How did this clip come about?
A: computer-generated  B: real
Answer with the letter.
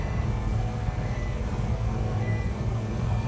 A